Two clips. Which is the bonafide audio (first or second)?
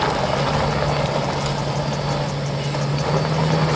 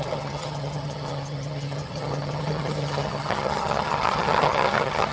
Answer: first